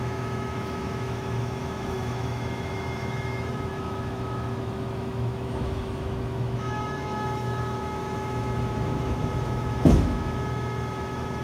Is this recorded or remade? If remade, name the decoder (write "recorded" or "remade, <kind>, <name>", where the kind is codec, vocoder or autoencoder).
remade, autoencoder, DAC-VAE